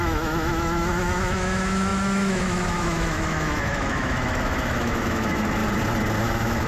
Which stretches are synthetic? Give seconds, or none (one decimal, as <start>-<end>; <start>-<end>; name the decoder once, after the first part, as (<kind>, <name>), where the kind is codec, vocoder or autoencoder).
0.0-5.6 (autoencoder, DAC-VAE); 6.2-6.7